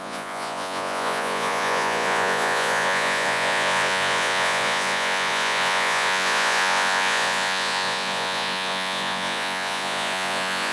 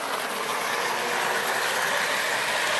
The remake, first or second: first